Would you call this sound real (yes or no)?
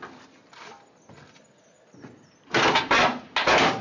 yes